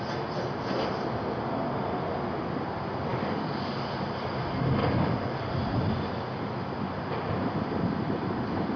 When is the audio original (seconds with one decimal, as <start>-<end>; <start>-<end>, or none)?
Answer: 0.0-3.1; 3.9-4.8; 5.5-8.8

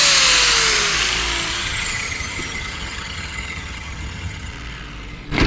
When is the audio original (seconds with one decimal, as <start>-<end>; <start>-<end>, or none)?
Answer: 0.0-1.5; 4.5-5.5

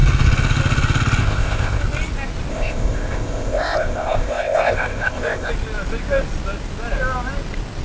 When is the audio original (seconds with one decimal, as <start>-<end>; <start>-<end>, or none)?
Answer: 0.0-1.2; 1.8-2.5; 5.5-7.8

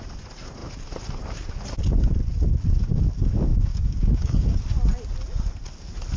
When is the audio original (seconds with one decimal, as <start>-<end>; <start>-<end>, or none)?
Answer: 0.0-3.5; 4.6-6.2

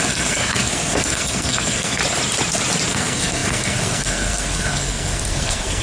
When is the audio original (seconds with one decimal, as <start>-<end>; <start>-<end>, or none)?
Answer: 2.0-2.9

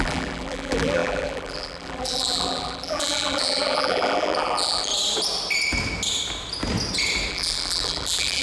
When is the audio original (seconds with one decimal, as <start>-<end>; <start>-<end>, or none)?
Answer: 4.9-7.3

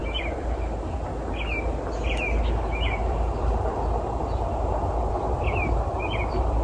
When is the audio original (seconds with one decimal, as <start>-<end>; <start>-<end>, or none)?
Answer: 0.9-3.0

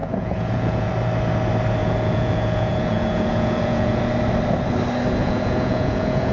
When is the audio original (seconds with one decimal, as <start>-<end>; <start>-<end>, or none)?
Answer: 0.9-1.8; 4.1-5.2